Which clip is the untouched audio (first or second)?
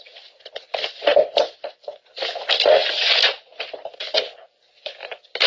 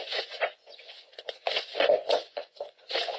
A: first